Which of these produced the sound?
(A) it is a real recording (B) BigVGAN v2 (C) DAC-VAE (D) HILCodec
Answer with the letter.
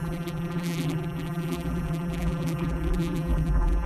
B